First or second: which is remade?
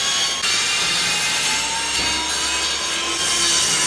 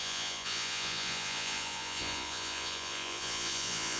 second